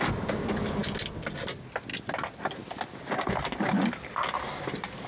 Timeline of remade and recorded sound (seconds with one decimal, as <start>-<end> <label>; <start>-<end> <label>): 0.0-5.1 recorded